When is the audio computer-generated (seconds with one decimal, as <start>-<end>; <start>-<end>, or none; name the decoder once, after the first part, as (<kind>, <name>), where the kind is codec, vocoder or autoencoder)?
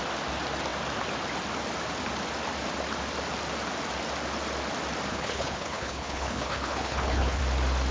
5.1-7.4 (codec, HILCodec)